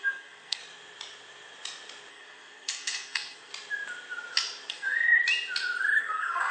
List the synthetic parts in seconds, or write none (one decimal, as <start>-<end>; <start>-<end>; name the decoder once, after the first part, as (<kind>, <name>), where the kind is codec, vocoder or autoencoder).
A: 0.0-0.6 (codec, SNAC); 2.1-3.5; 4.7-5.2; 6.0-6.5